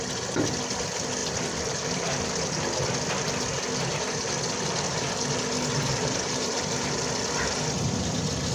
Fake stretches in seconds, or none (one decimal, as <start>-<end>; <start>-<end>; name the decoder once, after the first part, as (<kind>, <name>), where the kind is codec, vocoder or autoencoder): 6.0-6.6 (vocoder, BigVGAN v2)